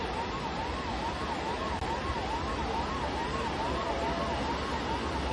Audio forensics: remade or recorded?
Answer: recorded